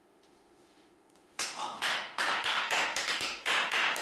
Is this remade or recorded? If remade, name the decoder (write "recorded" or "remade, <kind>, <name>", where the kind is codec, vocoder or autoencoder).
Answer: remade, autoencoder, DAC-VAE